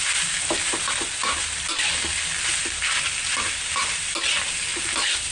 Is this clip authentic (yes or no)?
yes